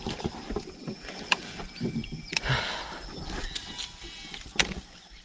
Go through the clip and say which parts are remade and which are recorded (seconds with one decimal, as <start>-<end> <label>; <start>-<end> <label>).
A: 0.0-5.2 recorded